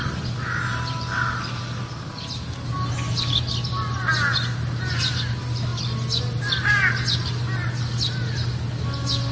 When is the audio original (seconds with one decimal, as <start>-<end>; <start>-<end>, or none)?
0.0-9.3